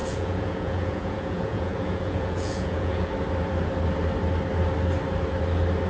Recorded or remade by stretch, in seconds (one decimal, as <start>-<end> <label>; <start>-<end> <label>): 0.0-3.1 remade; 3.1-5.9 recorded